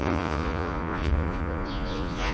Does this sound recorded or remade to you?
remade